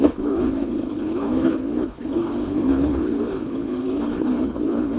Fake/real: fake